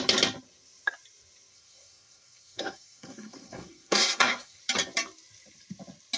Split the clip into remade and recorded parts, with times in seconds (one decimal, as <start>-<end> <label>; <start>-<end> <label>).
0.0-1.5 recorded; 1.5-4.6 remade; 4.6-6.2 recorded